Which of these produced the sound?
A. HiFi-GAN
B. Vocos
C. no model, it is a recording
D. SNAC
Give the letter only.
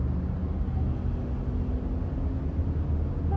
C